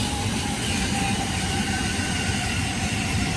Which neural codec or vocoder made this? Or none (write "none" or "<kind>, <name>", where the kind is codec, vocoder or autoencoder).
vocoder, BigVGAN v2